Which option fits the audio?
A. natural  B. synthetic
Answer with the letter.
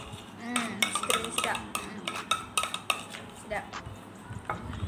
A